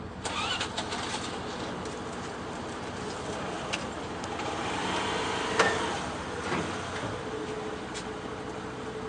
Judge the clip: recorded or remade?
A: recorded